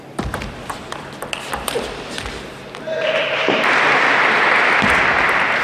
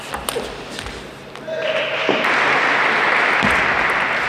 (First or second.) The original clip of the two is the second